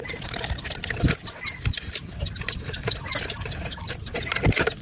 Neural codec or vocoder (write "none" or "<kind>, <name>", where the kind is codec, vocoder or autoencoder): none